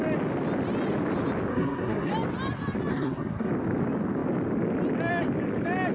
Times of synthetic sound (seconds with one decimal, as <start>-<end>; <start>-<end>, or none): 1.5-2.1; 2.9-3.5